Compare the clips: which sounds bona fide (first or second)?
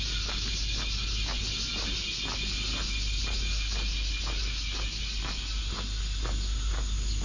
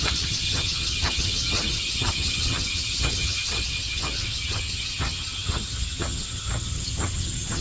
first